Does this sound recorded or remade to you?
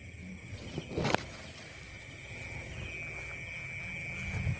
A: recorded